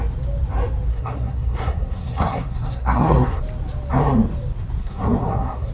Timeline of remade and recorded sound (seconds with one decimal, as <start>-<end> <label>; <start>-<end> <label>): 0.0-0.9 recorded; 0.9-3.4 remade; 3.4-4.8 recorded; 4.8-5.7 remade

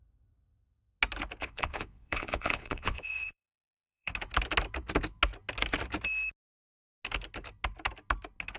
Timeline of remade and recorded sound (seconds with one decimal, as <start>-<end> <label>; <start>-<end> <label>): 0.0-1.4 recorded; 1.4-4.1 remade; 4.1-8.6 recorded

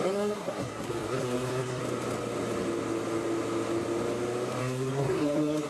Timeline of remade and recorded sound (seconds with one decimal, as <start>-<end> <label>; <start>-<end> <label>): 0.0-1.8 remade; 1.8-4.6 recorded; 4.6-5.7 remade

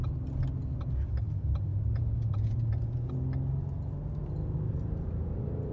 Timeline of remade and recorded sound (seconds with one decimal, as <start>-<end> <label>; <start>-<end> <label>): 0.0-1.7 recorded; 1.7-3.1 remade; 3.1-5.7 recorded

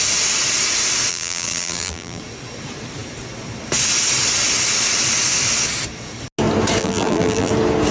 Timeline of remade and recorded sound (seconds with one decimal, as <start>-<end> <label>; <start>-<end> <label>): 0.0-1.1 recorded; 1.1-2.2 remade; 2.2-6.8 recorded; 6.8-7.5 remade; 7.5-7.9 recorded

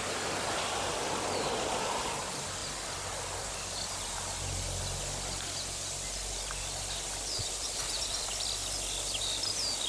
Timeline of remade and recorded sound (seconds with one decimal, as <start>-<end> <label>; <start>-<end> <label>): 0.0-9.9 recorded